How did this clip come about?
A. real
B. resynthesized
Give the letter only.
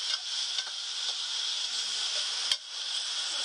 A